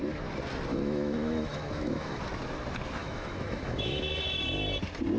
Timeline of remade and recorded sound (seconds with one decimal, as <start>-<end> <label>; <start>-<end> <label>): 0.0-0.7 recorded; 0.7-2.2 remade; 2.2-3.0 recorded; 3.0-4.0 remade; 4.0-5.2 recorded